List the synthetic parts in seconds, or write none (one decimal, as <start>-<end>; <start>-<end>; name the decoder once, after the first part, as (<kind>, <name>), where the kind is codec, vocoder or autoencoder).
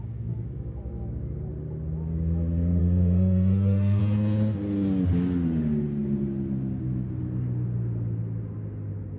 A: 2.8-4.0 (autoencoder, DAC-VAE)